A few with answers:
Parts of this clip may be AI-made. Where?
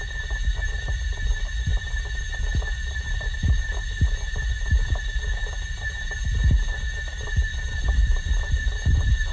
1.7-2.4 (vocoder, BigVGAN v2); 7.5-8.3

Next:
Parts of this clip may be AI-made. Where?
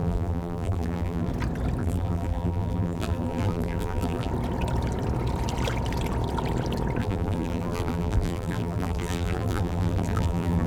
0.0-1.3 (vocoder, BigVGAN v2); 1.8-4.3; 7.0-10.7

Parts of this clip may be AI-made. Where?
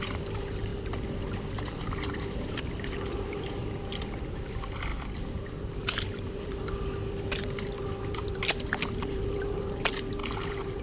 0.0-10.8 (vocoder, BigVGAN v2)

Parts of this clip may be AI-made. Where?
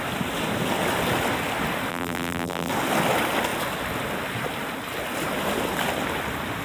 1.9-2.7 (vocoder, BigVGAN v2)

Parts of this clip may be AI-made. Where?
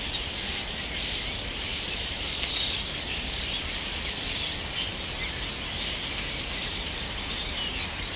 none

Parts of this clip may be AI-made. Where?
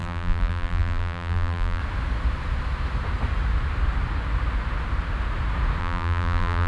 0.0-1.8 (vocoder, BigVGAN v2); 5.8-6.7